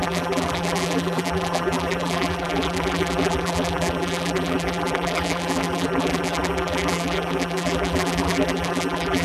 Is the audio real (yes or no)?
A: no